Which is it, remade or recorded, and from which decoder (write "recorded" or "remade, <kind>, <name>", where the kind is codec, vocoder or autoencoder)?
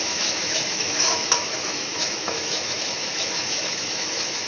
remade, autoencoder, DAC-VAE